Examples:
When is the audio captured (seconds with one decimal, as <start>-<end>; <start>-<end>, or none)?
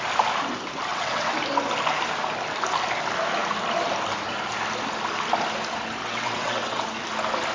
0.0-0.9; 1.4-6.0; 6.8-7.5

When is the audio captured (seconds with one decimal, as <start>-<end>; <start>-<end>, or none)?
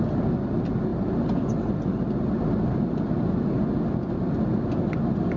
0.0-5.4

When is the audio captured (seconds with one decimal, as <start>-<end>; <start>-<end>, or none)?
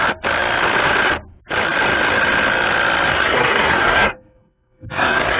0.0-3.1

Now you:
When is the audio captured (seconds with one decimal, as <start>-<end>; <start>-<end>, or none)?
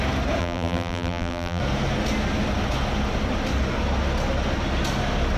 0.0-0.4; 1.6-5.4